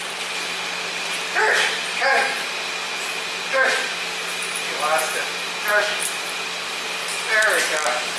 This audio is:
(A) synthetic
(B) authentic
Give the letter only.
B